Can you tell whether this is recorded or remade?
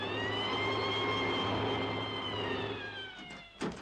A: recorded